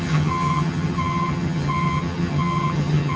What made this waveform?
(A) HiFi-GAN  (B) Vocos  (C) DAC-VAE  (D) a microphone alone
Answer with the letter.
A